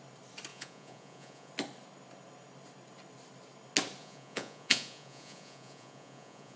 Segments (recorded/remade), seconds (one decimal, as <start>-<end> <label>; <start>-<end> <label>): 0.0-0.5 recorded; 0.5-1.5 remade; 1.5-4.0 recorded; 4.0-6.6 remade